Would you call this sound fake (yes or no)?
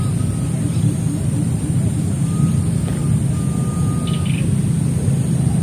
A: no